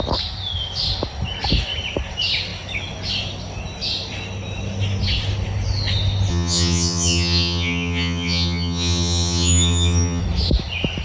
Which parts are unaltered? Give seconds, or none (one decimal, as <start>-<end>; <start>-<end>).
0.0-6.3; 10.2-11.0